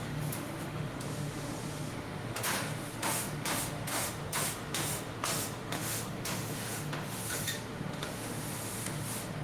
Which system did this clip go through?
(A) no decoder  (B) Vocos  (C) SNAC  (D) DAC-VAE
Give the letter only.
D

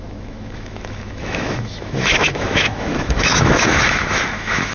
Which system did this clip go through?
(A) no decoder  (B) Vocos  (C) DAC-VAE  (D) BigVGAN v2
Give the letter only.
C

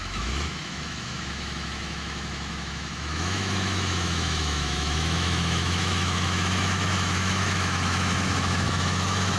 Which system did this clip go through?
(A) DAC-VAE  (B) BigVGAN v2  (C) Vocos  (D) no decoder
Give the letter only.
A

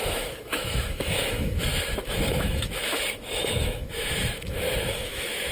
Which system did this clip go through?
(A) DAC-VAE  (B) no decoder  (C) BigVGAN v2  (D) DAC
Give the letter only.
A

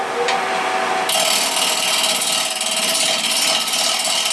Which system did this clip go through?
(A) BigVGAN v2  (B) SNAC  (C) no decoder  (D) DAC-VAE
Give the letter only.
C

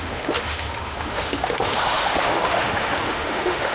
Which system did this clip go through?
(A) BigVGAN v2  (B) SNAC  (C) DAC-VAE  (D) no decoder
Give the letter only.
C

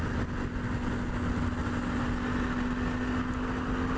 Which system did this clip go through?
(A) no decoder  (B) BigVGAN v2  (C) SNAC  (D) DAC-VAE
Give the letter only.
A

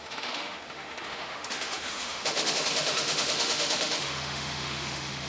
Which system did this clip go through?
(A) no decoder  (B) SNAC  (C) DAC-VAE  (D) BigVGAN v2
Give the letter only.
C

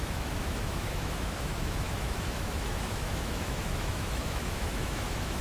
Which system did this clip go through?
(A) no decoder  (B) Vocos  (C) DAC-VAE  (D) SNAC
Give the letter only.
C